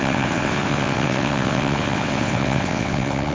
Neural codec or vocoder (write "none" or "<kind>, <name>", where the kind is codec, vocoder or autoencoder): vocoder, WaveNeXt